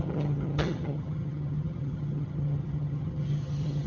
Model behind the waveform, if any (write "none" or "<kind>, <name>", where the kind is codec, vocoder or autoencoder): vocoder, HiFi-GAN